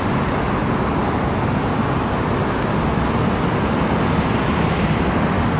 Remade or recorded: recorded